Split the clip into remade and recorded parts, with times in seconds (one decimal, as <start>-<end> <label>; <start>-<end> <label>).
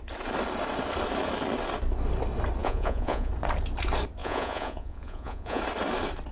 0.0-2.6 recorded; 2.6-3.3 remade; 3.3-4.2 recorded; 4.2-5.6 remade; 5.6-6.3 recorded